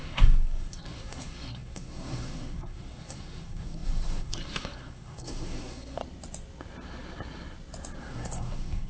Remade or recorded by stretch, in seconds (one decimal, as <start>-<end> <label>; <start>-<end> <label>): 0.0-6.0 remade; 6.0-8.0 recorded; 8.0-8.9 remade